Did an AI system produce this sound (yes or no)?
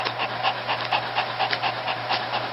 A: no